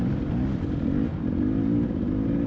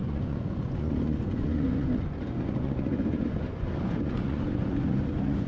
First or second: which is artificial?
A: second